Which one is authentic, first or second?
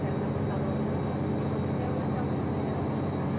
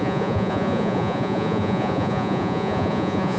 first